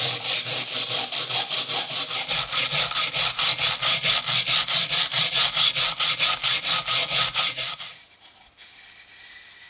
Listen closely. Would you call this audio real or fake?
real